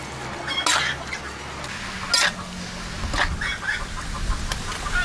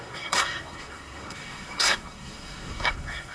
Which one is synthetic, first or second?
second